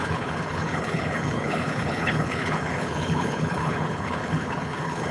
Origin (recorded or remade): remade